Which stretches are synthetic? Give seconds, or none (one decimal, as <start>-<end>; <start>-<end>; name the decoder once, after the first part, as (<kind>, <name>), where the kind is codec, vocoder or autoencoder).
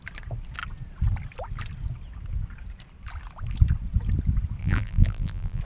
4.6-5.6 (vocoder, BigVGAN v2)